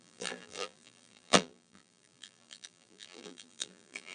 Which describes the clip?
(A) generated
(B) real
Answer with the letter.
A